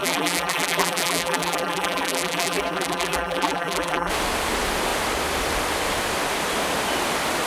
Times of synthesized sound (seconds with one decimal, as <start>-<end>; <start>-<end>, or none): 0.0-4.1